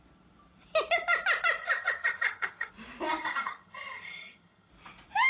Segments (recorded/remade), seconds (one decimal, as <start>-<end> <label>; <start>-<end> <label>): 0.0-1.6 recorded; 1.6-2.7 remade; 2.7-3.2 recorded; 3.2-4.7 remade; 4.7-5.3 recorded